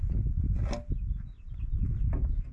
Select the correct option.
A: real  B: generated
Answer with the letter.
A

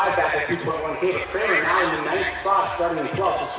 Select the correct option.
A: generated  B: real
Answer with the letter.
B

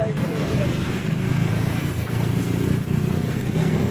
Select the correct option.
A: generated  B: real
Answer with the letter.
A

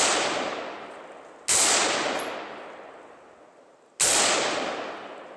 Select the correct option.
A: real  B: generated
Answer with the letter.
A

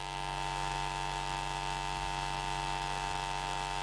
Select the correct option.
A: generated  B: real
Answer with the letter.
B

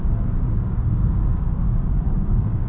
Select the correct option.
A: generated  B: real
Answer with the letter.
A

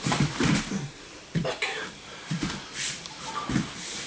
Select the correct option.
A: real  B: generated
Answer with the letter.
B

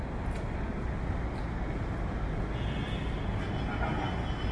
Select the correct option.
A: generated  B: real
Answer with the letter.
B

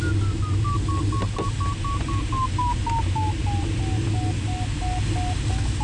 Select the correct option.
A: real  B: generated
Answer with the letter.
A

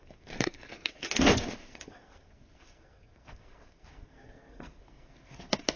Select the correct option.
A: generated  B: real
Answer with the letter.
A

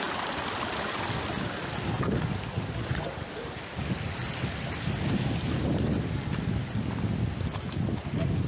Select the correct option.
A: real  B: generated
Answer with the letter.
A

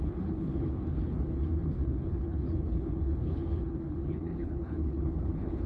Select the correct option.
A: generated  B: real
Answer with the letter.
A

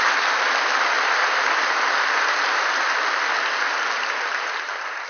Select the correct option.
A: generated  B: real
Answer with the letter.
B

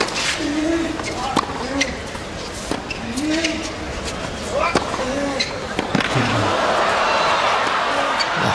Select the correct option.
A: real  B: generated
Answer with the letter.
A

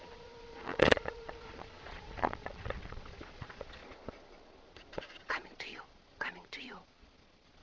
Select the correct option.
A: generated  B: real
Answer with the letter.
A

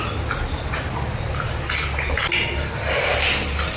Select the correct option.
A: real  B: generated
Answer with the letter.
A